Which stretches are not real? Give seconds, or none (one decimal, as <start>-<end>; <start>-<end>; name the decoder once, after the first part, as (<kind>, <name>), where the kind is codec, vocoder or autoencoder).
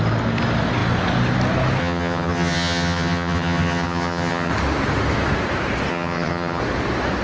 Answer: 1.8-4.5 (vocoder, HiFi-GAN); 5.9-6.6